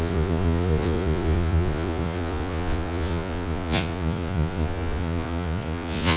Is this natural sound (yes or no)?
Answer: no